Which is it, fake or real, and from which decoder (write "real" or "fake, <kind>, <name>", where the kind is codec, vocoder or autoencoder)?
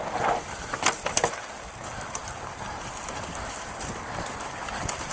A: real